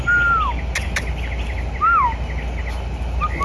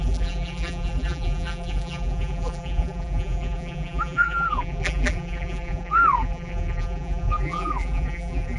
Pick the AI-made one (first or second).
second